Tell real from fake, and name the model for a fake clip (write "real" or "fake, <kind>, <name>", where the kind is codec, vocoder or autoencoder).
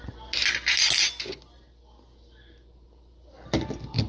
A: real